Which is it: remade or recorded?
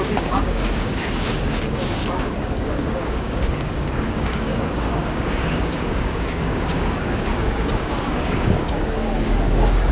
remade